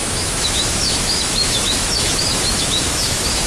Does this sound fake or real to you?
fake